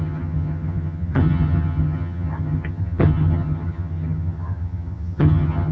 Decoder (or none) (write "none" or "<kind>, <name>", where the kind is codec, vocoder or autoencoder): vocoder, HiFi-GAN